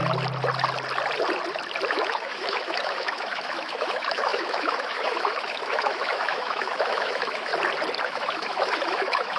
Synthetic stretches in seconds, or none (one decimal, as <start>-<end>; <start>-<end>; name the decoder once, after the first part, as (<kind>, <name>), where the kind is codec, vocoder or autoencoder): 1.9-7.5 (autoencoder, DAC-VAE); 8.0-9.4

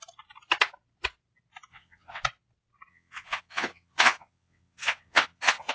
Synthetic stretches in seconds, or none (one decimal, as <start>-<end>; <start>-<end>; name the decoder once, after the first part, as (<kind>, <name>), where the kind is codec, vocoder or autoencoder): 1.7-2.2 (vocoder, WaveNeXt); 2.9-5.7

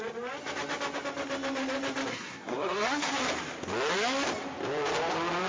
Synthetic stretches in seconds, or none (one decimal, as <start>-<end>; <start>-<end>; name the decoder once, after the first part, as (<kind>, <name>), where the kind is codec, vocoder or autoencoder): 2.1-3.2 (codec, SNAC)

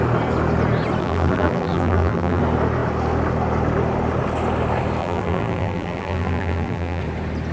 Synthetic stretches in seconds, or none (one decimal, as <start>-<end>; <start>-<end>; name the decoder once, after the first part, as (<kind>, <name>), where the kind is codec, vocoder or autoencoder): 1.0-2.4 (vocoder, BigVGAN v2); 5.0-7.0

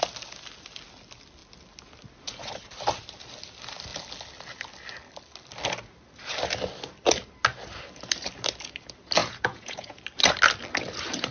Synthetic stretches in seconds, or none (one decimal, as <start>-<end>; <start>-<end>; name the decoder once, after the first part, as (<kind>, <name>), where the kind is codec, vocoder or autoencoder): 9.2-10.0 (vocoder, Vocos)